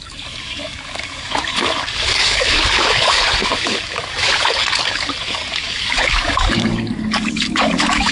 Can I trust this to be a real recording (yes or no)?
no